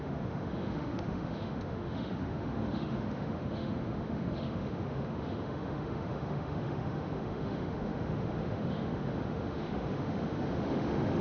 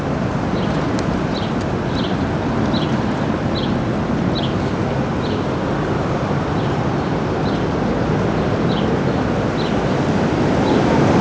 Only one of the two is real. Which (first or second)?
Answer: second